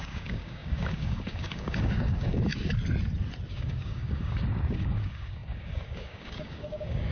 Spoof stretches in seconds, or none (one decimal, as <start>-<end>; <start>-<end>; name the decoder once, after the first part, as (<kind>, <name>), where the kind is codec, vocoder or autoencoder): 0.0-2.5 (codec, DAC); 3.5-7.1